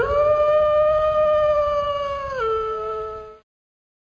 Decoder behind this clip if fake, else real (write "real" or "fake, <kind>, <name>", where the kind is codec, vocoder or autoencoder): real